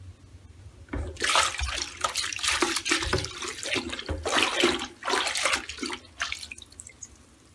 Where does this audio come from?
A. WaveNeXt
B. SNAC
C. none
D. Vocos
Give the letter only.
C